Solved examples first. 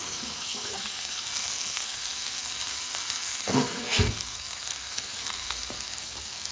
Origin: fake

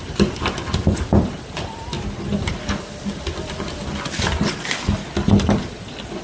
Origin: real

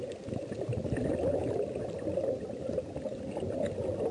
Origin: real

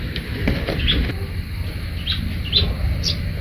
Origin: real